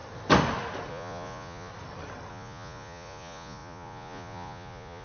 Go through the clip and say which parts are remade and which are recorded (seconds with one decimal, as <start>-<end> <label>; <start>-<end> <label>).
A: 0.0-0.9 recorded; 0.9-1.7 remade; 1.7-2.3 recorded; 2.3-5.0 remade